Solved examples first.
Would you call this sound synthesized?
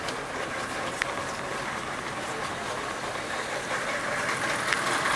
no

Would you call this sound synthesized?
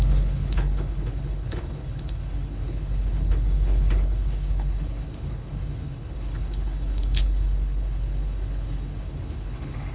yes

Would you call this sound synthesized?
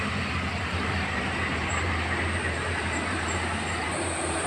yes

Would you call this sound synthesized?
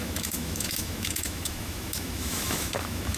yes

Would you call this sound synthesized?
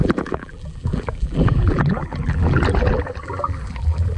yes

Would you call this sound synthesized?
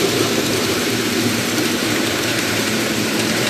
yes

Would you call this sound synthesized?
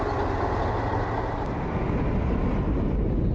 no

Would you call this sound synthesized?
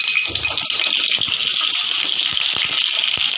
no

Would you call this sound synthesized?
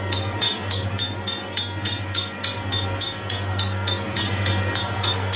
yes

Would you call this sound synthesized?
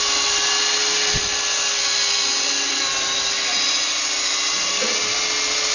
no